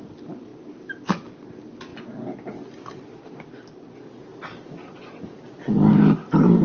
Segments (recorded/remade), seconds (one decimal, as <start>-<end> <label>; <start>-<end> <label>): 0.0-6.6 recorded